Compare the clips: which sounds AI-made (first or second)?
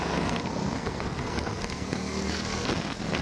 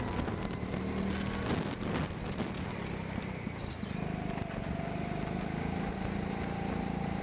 first